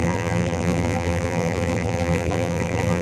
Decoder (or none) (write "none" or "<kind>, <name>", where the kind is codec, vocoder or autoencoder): vocoder, BigVGAN v2